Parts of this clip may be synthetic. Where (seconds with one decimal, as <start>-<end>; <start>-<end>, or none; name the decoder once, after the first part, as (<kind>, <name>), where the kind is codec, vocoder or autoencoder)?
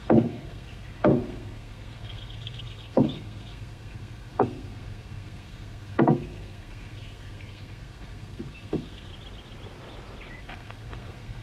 0.0-9.1 (codec, SNAC); 10.4-11.4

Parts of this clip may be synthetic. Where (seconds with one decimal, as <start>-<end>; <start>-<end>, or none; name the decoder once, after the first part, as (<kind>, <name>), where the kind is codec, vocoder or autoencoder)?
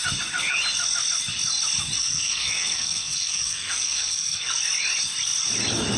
2.0-4.5 (codec, SNAC)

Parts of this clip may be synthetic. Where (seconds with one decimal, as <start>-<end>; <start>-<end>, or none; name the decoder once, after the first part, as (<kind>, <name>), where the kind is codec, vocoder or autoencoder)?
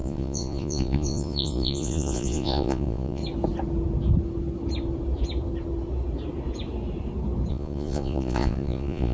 0.0-3.2 (vocoder, Vocos); 7.5-9.1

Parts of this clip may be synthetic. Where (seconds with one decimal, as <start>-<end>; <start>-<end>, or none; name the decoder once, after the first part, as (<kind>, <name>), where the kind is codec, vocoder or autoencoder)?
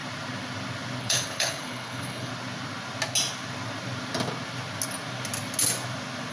1.0-2.3 (codec, HILCodec)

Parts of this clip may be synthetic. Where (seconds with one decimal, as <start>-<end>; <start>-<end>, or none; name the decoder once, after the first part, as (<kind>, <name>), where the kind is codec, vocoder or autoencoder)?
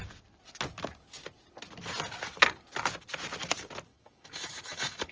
3.9-5.1 (autoencoder, DAC-VAE)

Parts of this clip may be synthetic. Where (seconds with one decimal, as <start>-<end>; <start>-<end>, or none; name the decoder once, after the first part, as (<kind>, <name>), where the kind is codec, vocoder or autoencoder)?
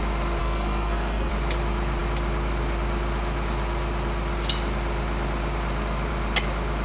0.4-1.3 (codec, SNAC)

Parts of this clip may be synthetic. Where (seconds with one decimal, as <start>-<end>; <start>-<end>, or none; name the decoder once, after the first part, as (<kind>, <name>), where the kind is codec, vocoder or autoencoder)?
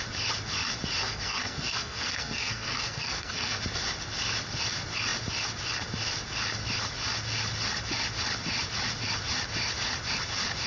1.0-3.6 (codec, SNAC)